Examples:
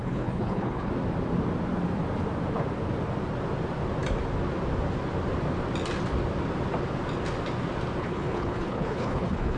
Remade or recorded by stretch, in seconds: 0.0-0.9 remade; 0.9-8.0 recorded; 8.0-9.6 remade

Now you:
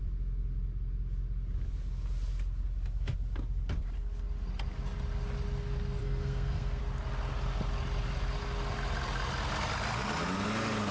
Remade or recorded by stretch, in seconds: 0.0-6.0 recorded; 6.0-6.8 remade; 6.8-10.9 recorded

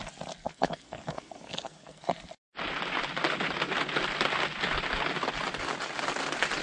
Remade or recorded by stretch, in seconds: 0.0-0.5 recorded; 0.5-2.1 remade; 2.1-6.6 recorded

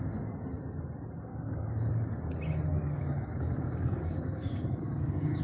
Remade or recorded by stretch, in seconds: 0.0-1.3 recorded; 1.3-1.9 remade; 1.9-2.7 recorded; 2.7-5.4 remade

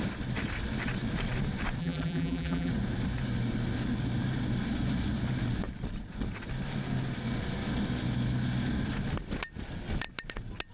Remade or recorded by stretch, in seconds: 0.0-1.8 recorded; 1.8-2.7 remade; 2.7-10.7 recorded